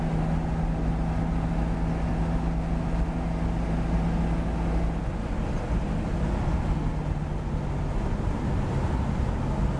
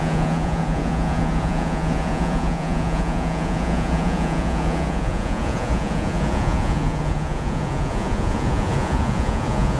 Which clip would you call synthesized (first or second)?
second